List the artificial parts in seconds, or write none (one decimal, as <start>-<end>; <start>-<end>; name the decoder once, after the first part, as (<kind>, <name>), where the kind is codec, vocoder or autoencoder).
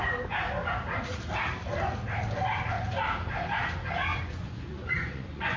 4.1-5.6 (vocoder, Vocos)